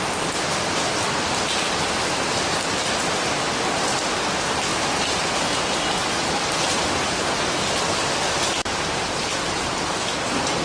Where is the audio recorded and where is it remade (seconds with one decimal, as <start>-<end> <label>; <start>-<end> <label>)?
0.0-4.7 recorded; 4.7-5.4 remade; 5.4-10.6 recorded